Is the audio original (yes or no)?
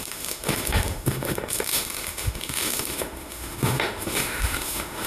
no